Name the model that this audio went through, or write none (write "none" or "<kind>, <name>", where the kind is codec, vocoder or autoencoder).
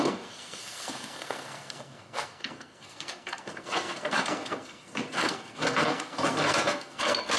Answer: codec, SNAC